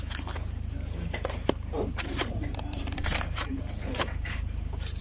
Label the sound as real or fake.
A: fake